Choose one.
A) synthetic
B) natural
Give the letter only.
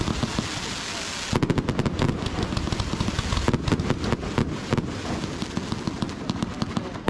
B